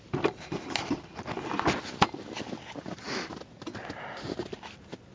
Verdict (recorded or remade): recorded